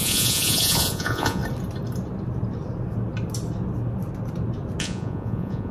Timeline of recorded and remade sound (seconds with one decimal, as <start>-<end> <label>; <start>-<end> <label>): 0.0-1.4 remade; 1.4-4.8 recorded; 4.8-5.7 remade